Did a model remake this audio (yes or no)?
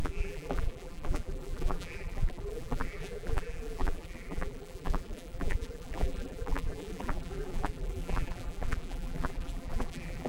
yes